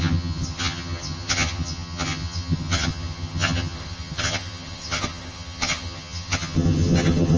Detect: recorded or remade remade